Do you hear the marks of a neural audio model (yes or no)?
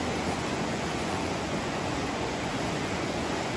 yes